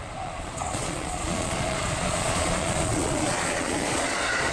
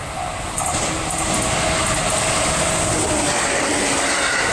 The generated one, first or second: first